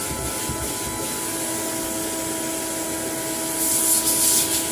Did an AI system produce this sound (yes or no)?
no